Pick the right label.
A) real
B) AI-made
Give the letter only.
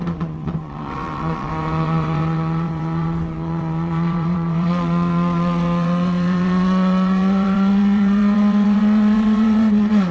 B